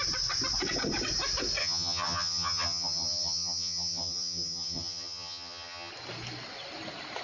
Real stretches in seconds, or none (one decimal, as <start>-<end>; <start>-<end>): 0.0-1.6; 5.9-7.2